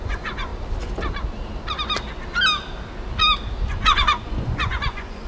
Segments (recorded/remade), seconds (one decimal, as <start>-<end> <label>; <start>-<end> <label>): 0.0-0.5 remade; 0.5-3.7 recorded; 3.7-5.3 remade